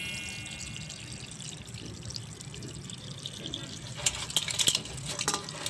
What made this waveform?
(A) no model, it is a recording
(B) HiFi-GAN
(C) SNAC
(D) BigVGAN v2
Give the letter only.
A